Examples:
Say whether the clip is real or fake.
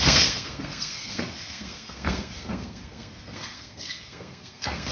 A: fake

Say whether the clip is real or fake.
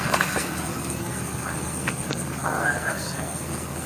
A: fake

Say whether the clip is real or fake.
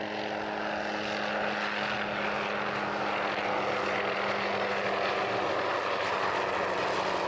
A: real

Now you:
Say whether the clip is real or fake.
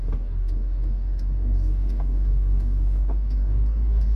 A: fake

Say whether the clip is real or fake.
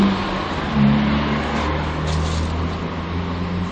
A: real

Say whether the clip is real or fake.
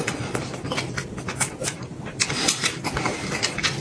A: real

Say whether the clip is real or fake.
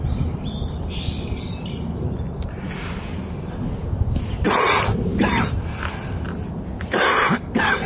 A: real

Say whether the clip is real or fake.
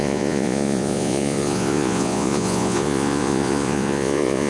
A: fake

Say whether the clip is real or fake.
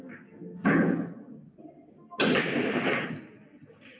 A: real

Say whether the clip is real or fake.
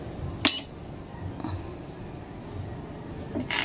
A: real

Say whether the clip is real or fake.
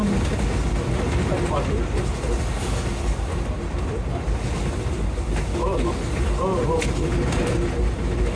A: real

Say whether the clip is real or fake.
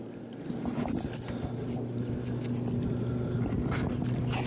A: real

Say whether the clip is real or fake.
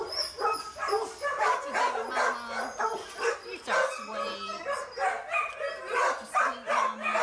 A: real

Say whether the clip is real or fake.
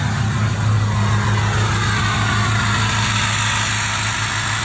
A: real